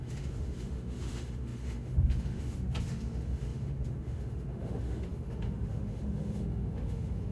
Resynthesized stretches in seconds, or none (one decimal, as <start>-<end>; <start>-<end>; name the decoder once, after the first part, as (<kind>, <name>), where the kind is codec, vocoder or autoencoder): 0.0-7.3 (autoencoder, DAC-VAE)